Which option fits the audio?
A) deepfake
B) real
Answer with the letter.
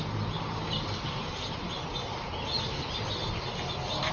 B